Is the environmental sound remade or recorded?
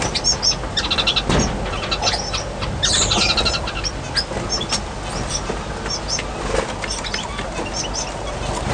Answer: recorded